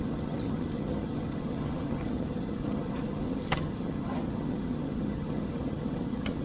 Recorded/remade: remade